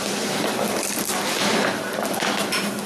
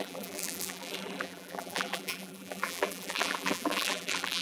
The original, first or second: first